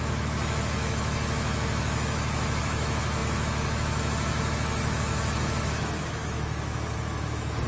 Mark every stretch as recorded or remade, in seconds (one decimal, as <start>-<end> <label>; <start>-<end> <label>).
0.0-7.7 remade